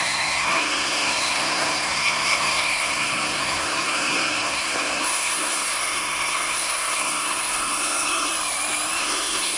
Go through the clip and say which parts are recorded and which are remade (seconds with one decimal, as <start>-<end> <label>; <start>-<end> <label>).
0.0-8.3 remade; 8.3-9.0 recorded; 9.0-9.6 remade